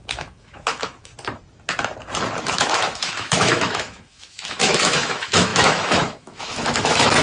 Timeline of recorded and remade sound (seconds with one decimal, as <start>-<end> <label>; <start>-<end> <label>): 0.0-1.1 remade; 1.1-2.4 recorded; 2.4-7.2 remade